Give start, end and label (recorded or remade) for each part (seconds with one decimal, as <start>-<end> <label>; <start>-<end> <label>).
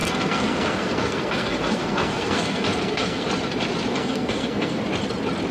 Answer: 0.0-3.3 remade; 3.3-3.9 recorded; 3.9-4.8 remade; 4.8-5.5 recorded